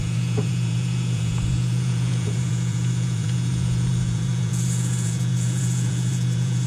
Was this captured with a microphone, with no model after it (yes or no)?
no